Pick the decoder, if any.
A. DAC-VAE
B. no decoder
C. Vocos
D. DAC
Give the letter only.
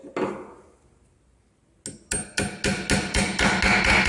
B